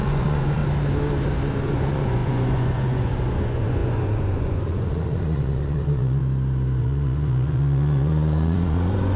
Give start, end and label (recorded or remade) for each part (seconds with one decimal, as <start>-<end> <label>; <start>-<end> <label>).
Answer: 0.0-0.6 remade; 0.6-1.6 recorded; 1.6-6.2 remade; 6.2-6.8 recorded; 6.8-9.2 remade